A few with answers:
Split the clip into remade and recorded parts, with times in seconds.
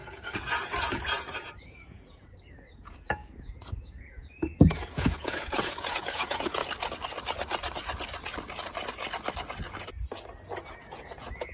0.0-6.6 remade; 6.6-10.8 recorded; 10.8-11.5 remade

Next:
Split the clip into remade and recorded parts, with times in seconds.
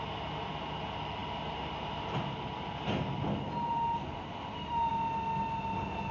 0.0-6.1 recorded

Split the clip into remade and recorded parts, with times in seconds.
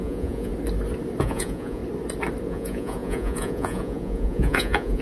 0.0-0.5 remade; 0.5-1.2 recorded; 1.2-1.8 remade; 1.8-2.5 recorded; 2.5-5.0 remade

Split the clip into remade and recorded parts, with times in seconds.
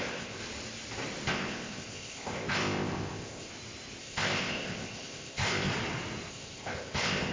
0.0-0.4 remade; 0.4-1.3 recorded; 1.3-3.5 remade; 3.5-4.0 recorded; 4.0-5.7 remade; 5.7-6.3 recorded; 6.3-7.3 remade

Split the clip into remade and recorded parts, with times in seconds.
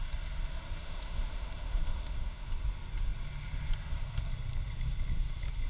0.0-0.8 recorded; 0.8-2.5 remade; 2.5-5.7 recorded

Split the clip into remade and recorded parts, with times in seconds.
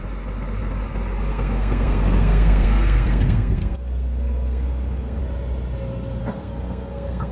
0.0-1.3 recorded; 1.3-5.2 remade; 5.2-6.2 recorded; 6.2-7.3 remade